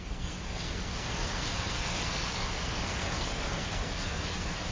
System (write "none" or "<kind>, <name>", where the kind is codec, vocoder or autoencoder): codec, SNAC